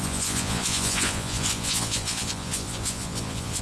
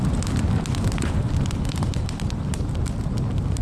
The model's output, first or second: first